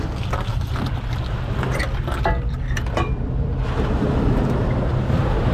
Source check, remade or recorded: recorded